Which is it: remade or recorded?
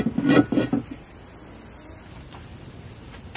recorded